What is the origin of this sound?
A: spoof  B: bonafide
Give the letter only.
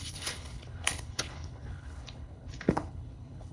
A